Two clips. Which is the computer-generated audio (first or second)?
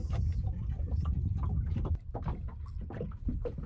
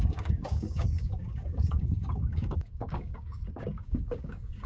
second